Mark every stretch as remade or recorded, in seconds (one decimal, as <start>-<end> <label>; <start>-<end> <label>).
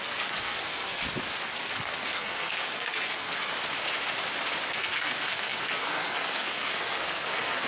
0.0-1.0 remade; 1.0-1.6 recorded; 1.6-3.5 remade; 3.5-4.7 recorded; 4.7-7.7 remade